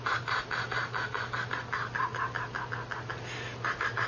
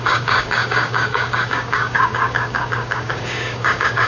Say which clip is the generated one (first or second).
second